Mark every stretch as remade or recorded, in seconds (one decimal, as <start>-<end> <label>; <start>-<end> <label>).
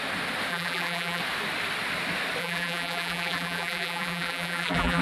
0.0-0.5 recorded; 0.5-1.2 remade; 1.2-2.4 recorded; 2.4-5.0 remade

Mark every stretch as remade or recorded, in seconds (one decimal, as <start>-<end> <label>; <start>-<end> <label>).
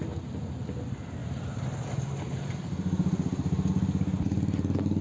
0.0-1.2 recorded; 1.2-3.7 remade; 3.7-5.0 recorded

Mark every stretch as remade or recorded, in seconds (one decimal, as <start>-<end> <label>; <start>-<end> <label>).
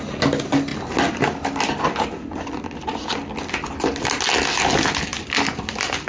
0.0-5.1 recorded; 5.1-6.1 remade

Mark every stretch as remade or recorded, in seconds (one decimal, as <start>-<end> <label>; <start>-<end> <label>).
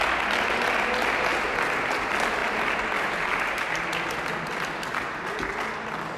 0.0-6.2 recorded